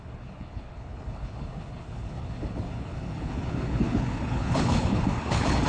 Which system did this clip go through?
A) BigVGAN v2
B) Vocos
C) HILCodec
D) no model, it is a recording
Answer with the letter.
C